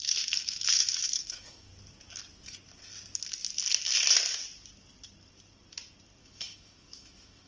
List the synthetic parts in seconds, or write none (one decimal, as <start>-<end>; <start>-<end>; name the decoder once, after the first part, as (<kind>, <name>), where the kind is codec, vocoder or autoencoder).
0.0-1.7 (autoencoder, DAC-VAE); 6.2-7.5